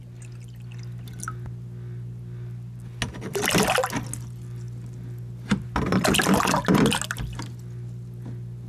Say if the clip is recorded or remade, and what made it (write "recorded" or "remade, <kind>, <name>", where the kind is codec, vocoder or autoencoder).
recorded